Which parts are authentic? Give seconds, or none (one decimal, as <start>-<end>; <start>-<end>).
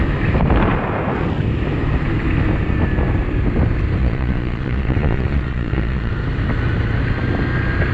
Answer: 0.0-4.0; 6.1-7.9